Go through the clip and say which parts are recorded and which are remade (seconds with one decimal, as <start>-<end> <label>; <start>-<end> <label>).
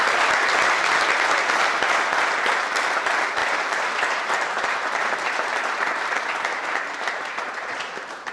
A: 0.0-3.4 recorded; 3.4-7.7 remade; 7.7-8.3 recorded